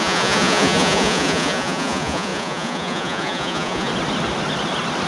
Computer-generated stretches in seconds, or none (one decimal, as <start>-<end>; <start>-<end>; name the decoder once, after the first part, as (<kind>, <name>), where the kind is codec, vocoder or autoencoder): 0.0-3.9 (vocoder, Vocos)